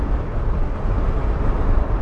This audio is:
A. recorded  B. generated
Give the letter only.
A